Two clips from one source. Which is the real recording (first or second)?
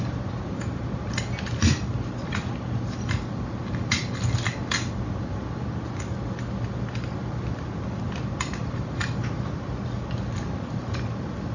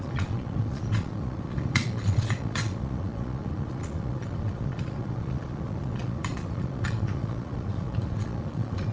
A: first